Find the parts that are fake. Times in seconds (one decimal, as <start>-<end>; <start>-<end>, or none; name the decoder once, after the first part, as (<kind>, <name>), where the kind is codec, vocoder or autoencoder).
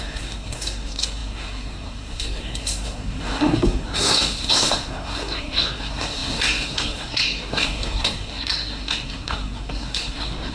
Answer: 0.0-10.5 (codec, SNAC)